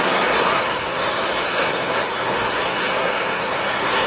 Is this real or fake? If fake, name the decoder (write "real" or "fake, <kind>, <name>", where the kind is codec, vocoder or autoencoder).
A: fake, codec, SNAC